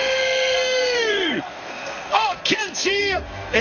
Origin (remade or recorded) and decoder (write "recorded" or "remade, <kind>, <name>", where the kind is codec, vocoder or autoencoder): remade, codec, SNAC